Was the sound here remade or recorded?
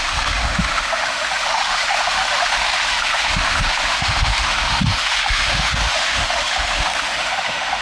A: remade